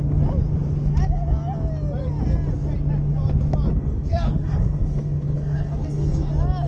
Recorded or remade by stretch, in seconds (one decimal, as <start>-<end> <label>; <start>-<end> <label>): 0.0-3.7 recorded; 3.7-6.3 remade; 6.3-6.7 recorded